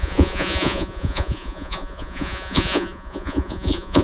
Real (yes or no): no